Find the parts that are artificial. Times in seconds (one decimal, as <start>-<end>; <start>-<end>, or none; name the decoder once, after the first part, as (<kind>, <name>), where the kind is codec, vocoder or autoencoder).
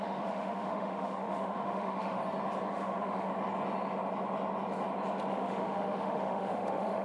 0.0-2.2 (autoencoder, DAC-VAE); 2.7-3.3; 5.3-7.0